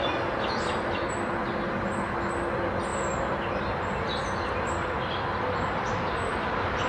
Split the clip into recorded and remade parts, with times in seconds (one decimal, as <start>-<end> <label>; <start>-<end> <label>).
0.0-6.9 recorded

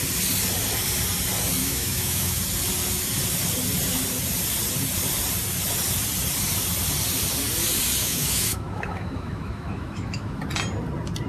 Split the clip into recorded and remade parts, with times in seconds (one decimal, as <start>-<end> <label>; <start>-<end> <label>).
0.0-1.6 recorded; 1.6-2.4 remade; 2.4-8.0 recorded; 8.0-10.4 remade; 10.4-11.3 recorded

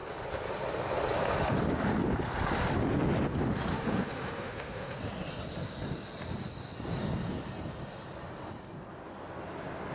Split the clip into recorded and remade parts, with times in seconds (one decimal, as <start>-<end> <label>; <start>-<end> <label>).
0.0-3.7 recorded; 3.7-5.0 remade; 5.0-9.9 recorded

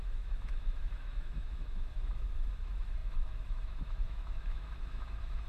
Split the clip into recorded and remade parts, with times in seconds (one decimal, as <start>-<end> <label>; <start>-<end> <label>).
0.0-5.5 remade

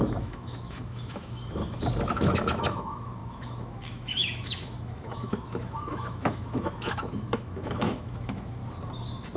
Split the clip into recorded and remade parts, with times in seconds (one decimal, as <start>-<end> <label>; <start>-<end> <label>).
0.0-1.6 remade; 1.6-2.1 recorded; 2.1-8.6 remade; 8.6-9.4 recorded

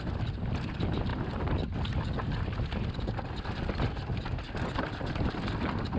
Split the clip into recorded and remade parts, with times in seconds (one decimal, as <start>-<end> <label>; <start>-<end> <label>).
0.0-6.0 recorded

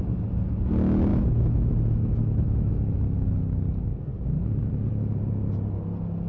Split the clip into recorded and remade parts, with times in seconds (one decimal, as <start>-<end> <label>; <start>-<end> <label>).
0.0-1.1 recorded; 1.1-1.7 remade; 1.7-2.2 recorded; 2.2-2.7 remade; 2.7-6.3 recorded

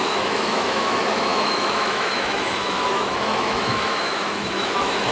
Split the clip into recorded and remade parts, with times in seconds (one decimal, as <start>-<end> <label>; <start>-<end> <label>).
0.0-5.1 remade